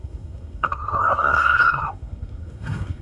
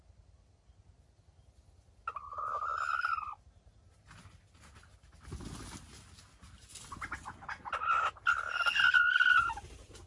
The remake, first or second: first